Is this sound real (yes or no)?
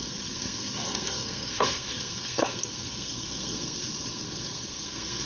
no